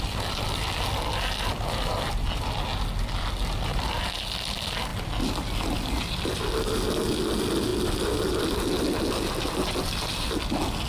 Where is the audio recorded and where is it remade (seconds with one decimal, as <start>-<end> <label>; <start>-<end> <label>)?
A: 0.0-10.9 recorded